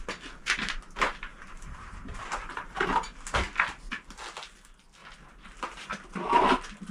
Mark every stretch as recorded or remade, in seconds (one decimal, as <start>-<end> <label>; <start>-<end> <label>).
0.0-1.3 recorded; 1.3-3.2 remade; 3.2-6.9 recorded